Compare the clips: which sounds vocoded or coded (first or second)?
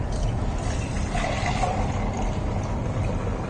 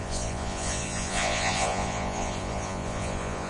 second